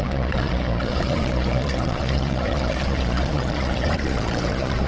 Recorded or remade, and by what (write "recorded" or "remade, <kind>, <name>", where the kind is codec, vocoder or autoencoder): remade, vocoder, Vocos